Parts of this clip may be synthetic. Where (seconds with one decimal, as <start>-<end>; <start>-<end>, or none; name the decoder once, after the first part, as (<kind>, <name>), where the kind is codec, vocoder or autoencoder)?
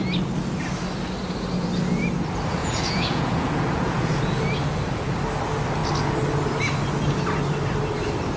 2.6-4.2 (vocoder, Vocos)